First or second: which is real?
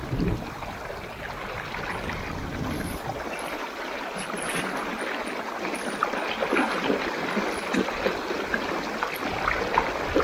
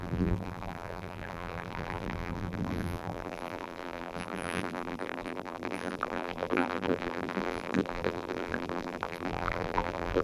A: first